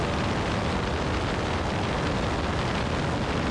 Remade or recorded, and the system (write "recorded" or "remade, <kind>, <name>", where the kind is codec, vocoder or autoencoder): recorded